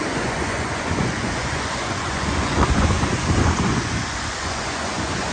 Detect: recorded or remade remade